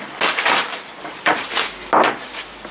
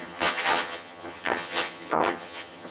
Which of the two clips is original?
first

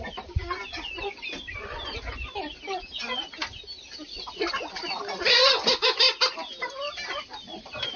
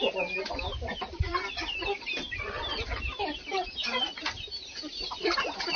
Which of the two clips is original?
first